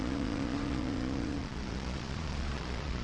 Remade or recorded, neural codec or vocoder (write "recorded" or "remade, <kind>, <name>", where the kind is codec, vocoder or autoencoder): remade, vocoder, Vocos